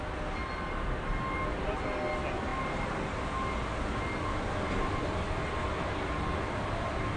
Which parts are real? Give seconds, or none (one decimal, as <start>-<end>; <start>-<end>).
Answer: 0.0-7.2